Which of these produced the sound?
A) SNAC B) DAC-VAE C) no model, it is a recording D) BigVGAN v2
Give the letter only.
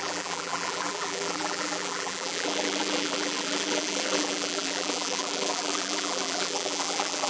D